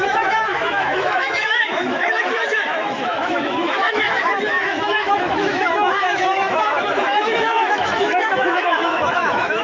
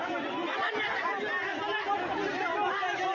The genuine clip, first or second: second